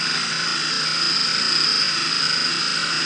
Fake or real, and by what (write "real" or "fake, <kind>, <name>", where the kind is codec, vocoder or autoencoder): real